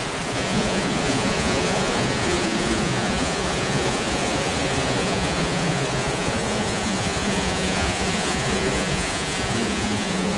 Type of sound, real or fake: fake